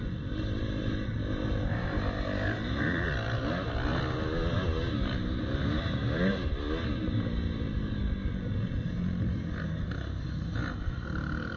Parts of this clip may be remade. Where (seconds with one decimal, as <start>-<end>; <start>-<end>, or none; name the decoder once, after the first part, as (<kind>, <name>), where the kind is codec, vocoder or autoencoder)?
none

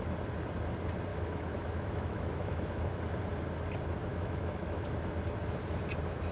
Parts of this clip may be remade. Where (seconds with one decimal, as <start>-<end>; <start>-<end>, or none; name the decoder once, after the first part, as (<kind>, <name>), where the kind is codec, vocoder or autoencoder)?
1.1-3.0 (autoencoder, DAC-VAE); 4.1-4.9

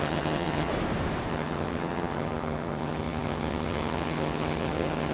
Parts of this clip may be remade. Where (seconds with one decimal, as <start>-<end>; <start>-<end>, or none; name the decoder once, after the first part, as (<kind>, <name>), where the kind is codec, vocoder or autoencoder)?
0.0-0.7 (vocoder, HiFi-GAN); 1.3-5.1

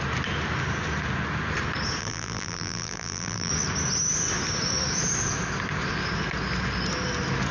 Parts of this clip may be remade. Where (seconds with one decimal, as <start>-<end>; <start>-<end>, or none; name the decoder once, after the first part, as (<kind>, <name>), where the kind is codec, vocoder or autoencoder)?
2.0-3.5 (vocoder, BigVGAN v2)